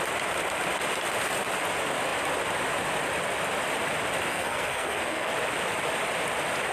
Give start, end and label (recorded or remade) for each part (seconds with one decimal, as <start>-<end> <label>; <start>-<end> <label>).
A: 0.0-4.3 recorded; 4.3-5.3 remade; 5.3-6.7 recorded